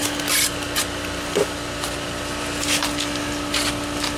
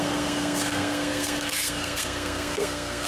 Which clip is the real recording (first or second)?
first